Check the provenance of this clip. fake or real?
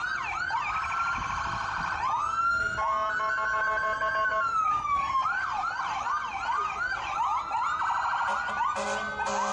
real